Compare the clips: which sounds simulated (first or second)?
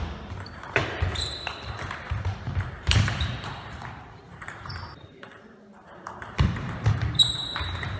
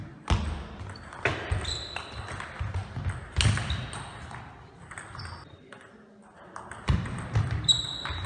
first